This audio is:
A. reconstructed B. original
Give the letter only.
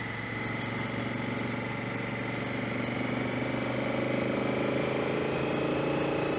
B